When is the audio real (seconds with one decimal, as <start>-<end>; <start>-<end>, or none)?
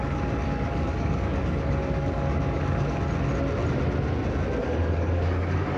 3.0-4.6